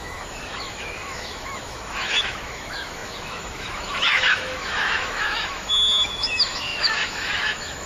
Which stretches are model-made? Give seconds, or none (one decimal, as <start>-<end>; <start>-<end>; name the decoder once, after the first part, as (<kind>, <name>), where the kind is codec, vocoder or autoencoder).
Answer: 0.0-7.9 (autoencoder, DAC-VAE)